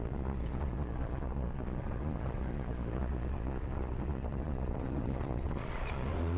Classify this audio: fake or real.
fake